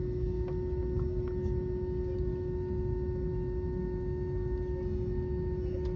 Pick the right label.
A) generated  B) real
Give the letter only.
B